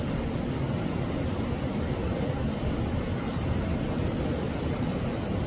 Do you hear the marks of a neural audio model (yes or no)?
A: no